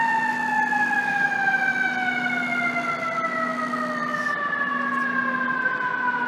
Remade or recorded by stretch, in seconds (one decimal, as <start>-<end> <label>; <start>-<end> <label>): 0.0-6.3 recorded